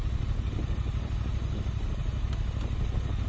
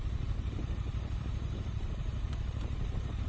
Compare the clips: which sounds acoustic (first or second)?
first